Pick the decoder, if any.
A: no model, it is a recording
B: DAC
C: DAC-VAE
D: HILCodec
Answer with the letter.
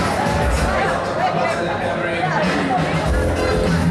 A